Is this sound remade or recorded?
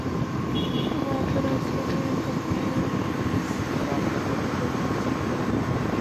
recorded